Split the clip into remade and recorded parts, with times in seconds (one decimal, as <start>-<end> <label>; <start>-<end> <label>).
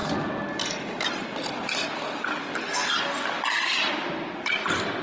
0.0-5.0 recorded